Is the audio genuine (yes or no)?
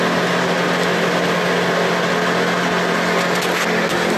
yes